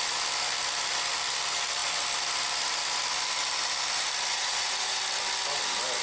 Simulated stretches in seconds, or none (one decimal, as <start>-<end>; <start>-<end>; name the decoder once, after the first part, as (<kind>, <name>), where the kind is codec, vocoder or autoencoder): 4.3-5.0 (vocoder, Vocos)